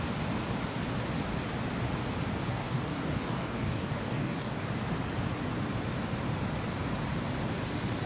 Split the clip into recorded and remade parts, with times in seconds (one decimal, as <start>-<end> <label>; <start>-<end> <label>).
0.0-2.5 recorded; 2.5-4.6 remade; 4.6-8.1 recorded